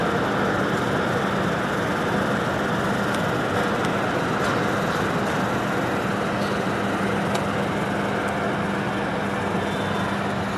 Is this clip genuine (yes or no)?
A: yes